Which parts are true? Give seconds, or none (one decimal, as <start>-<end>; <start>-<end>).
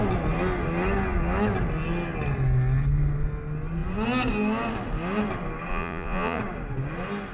0.0-5.7; 6.4-7.3